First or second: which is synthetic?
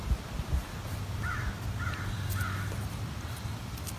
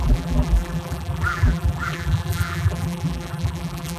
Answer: second